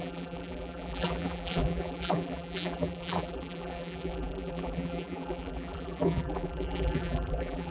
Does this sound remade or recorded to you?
remade